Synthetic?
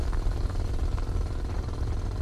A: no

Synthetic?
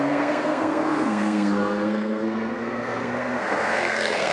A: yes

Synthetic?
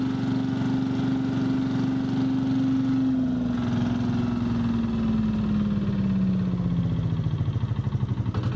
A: no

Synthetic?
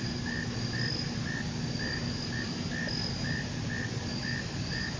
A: no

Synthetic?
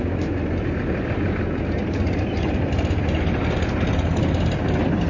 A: no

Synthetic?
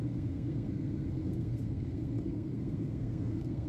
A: yes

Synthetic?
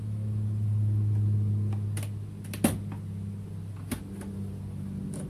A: no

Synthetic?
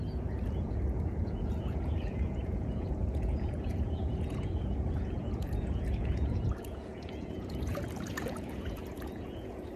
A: yes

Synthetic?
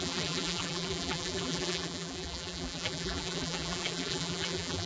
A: yes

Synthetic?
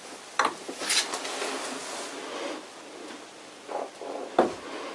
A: no